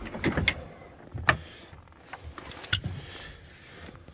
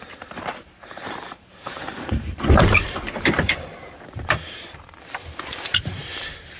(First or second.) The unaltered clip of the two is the first